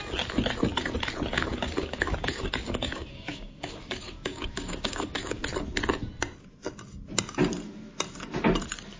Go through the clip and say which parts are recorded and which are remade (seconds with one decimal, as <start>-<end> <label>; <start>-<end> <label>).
0.0-1.3 recorded; 1.3-5.4 remade; 5.4-9.0 recorded